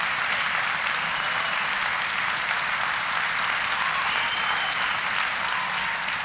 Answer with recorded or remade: recorded